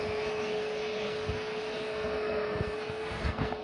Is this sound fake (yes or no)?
yes